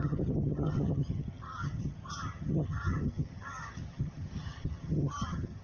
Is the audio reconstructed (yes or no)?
yes